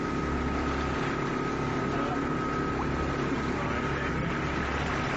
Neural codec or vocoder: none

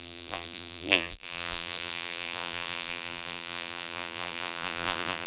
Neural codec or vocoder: vocoder, BigVGAN v2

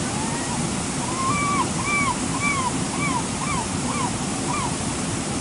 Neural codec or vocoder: vocoder, BigVGAN v2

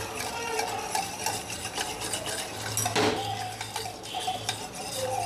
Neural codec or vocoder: none